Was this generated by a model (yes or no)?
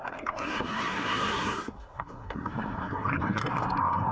yes